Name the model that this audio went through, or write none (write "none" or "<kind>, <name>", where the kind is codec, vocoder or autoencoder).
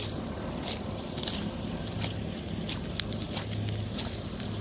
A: none